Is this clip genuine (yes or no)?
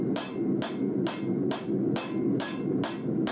yes